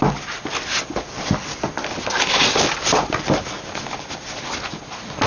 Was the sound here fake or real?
real